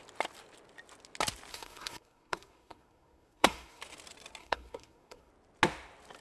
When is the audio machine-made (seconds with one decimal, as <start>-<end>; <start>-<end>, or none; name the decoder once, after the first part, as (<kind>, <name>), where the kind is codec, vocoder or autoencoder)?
1.5-3.8 (codec, SNAC); 4.4-5.3